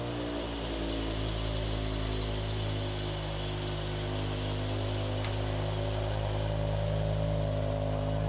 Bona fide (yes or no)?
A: yes